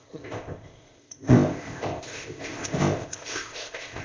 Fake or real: fake